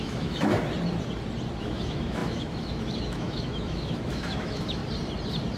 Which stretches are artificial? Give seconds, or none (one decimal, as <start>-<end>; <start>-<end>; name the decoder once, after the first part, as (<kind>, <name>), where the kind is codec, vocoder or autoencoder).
0.0-0.5 (autoencoder, DAC-VAE); 1.6-4.8